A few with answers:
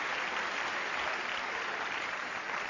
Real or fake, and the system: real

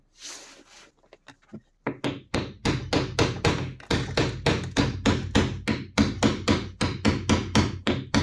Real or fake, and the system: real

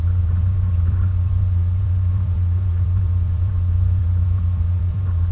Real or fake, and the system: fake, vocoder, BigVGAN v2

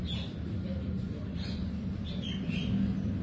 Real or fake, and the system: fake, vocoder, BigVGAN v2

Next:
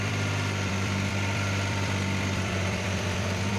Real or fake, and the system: fake, vocoder, BigVGAN v2